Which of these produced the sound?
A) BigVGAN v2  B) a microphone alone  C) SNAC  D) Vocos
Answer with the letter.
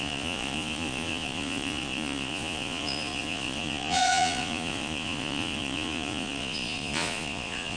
D